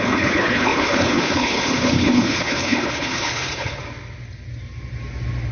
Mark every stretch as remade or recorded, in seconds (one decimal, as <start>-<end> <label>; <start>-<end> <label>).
0.0-3.8 remade; 3.8-5.5 recorded